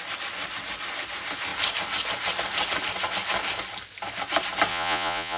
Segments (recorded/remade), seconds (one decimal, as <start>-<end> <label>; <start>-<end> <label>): 0.0-4.7 recorded; 4.7-5.4 remade

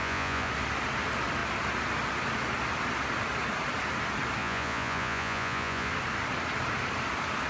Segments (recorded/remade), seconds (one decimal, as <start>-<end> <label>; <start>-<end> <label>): 0.0-0.5 remade; 0.5-4.4 recorded; 4.4-5.9 remade; 5.9-7.5 recorded

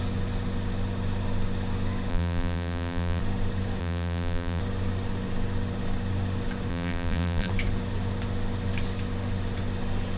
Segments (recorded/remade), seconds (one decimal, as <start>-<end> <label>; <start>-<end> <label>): 0.0-2.1 recorded; 2.1-3.2 remade; 3.2-3.8 recorded; 3.8-4.6 remade; 4.6-6.7 recorded; 6.7-7.5 remade; 7.5-10.2 recorded

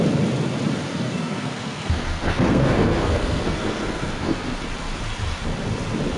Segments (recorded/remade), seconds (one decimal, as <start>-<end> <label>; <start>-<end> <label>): 0.0-0.9 recorded; 0.9-4.6 remade; 4.6-6.2 recorded